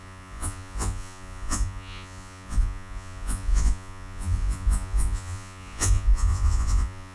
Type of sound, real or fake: fake